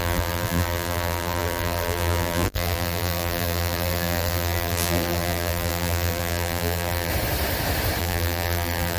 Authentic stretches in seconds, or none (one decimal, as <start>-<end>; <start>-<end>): 7.1-8.0